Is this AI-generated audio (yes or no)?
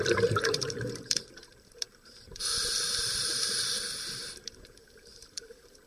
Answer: yes